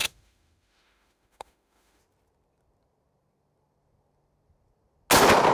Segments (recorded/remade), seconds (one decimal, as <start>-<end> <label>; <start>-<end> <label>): 0.0-2.0 remade; 2.0-5.5 recorded